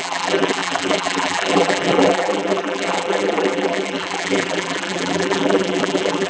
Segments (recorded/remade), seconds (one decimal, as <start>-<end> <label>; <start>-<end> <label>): 0.0-6.3 remade